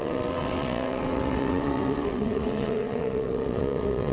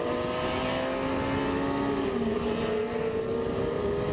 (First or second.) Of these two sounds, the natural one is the second